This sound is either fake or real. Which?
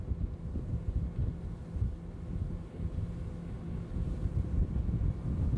real